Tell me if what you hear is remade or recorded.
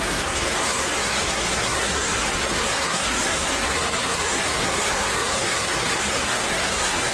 remade